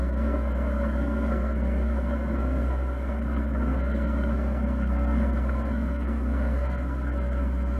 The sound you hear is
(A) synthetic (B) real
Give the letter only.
A